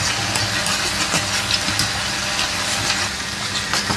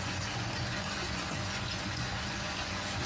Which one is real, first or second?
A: first